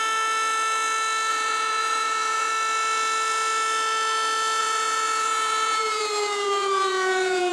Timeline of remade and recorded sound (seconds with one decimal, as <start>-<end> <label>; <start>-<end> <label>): 0.0-1.3 recorded; 1.3-2.5 remade; 2.5-4.6 recorded; 4.6-7.5 remade